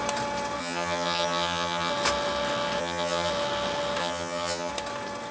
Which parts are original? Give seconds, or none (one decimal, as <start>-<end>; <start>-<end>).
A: 0.0-0.6; 1.9-2.8; 3.3-4.0; 4.7-5.3